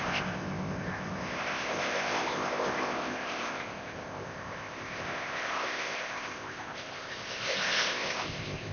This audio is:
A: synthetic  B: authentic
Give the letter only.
A